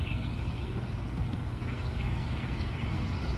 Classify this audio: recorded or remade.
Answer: remade